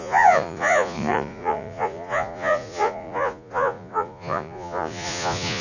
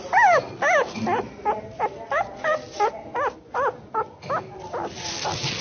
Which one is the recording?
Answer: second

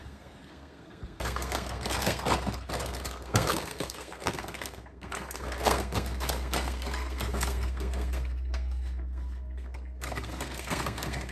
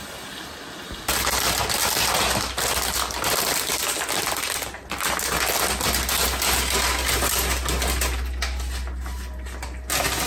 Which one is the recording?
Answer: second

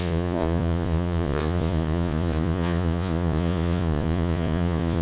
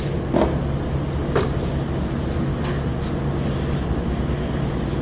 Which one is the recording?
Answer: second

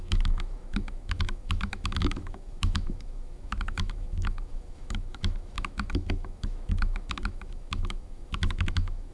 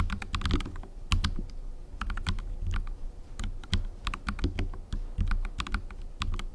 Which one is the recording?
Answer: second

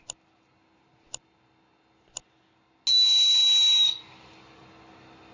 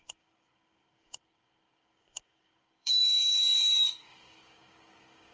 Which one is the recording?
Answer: first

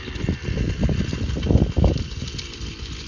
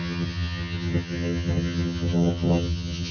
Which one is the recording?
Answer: first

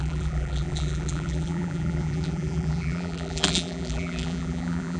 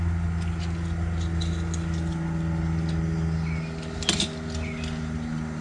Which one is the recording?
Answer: second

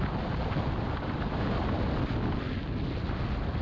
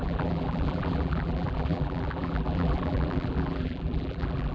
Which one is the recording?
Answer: first